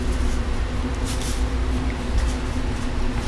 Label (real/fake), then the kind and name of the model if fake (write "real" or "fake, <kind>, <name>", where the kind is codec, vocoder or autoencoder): real